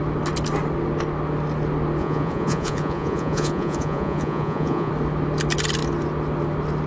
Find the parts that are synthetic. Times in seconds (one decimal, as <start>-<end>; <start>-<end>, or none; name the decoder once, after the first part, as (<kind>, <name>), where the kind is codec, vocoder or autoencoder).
2.0-4.9 (vocoder, Vocos)